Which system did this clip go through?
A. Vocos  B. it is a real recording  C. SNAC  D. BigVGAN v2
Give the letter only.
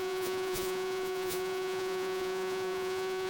A